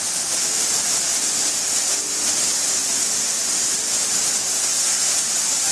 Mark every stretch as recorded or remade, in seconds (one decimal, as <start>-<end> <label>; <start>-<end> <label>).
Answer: 0.0-4.4 recorded; 4.4-5.1 remade; 5.1-5.7 recorded